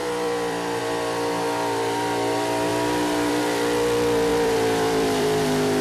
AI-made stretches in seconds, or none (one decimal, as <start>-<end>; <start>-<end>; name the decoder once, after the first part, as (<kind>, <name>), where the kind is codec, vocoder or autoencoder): 0.0-0.8 (vocoder, BigVGAN v2); 4.3-5.8